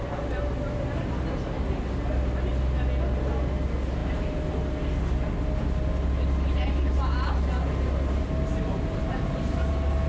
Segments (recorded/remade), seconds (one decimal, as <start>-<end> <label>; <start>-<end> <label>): 0.0-10.1 recorded